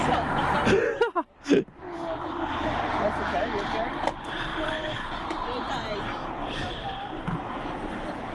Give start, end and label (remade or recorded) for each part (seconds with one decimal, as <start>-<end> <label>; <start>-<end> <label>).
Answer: 0.0-4.5 recorded; 4.5-7.5 remade; 7.5-8.3 recorded